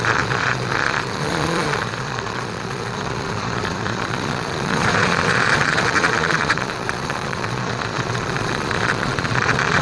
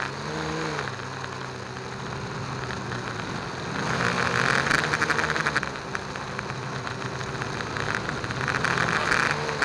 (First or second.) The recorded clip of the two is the second